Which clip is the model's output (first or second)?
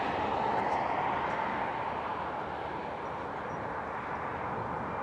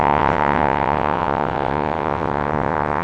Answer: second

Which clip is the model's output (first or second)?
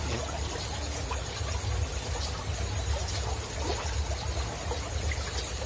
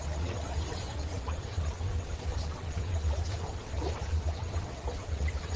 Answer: second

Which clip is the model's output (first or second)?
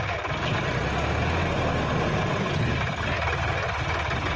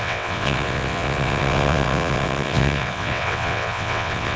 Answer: second